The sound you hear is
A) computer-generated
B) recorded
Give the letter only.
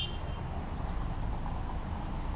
B